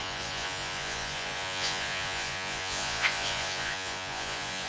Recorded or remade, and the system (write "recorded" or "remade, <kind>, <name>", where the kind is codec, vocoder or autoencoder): remade, vocoder, Vocos